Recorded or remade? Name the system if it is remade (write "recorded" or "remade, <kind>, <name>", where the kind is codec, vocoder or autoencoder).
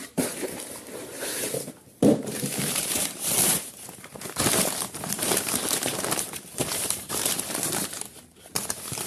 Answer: remade, vocoder, BigVGAN v2